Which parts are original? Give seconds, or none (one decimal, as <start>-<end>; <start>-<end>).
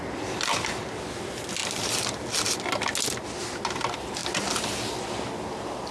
0.0-5.9